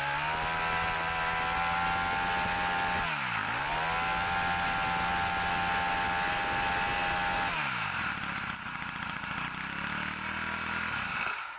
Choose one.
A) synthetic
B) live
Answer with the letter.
B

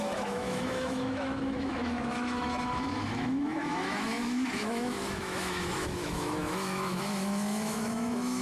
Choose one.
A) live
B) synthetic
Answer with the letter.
B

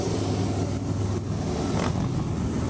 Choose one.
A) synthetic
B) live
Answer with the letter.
B